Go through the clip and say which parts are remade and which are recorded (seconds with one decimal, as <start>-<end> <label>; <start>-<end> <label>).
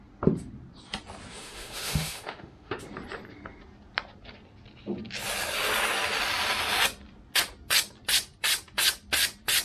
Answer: 0.0-1.3 recorded; 1.3-2.8 remade; 2.8-9.6 recorded